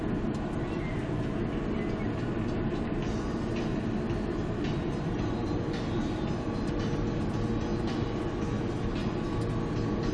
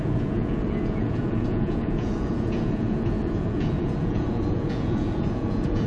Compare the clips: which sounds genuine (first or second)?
first